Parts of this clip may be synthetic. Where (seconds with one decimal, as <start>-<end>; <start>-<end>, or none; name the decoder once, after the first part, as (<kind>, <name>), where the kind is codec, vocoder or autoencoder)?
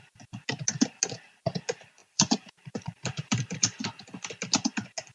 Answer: 2.0-4.3 (vocoder, BigVGAN v2)